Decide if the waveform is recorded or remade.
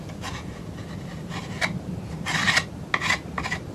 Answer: recorded